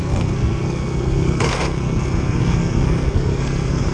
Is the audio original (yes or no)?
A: no